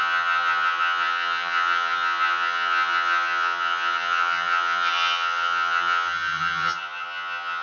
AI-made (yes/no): yes